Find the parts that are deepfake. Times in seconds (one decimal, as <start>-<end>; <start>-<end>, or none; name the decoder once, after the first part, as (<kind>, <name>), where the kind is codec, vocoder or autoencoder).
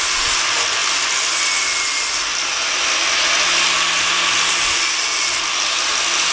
none